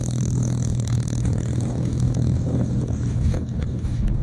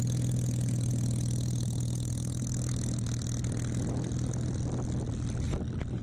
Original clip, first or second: second